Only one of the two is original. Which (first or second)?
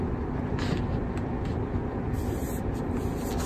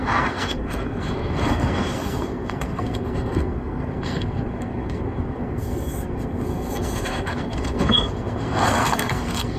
first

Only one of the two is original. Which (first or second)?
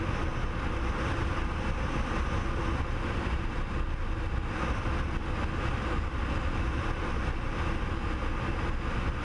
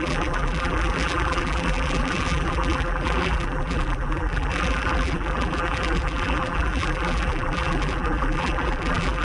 first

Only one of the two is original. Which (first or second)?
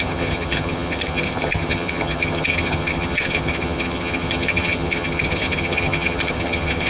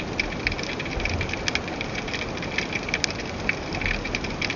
second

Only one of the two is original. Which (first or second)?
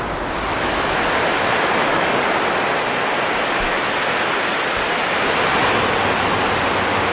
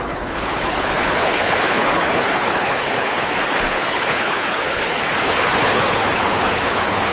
first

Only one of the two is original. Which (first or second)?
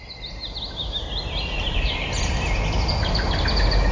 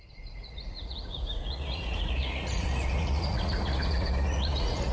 first